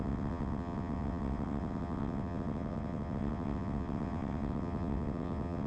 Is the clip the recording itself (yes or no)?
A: no